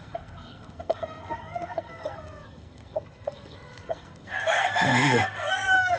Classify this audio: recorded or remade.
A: remade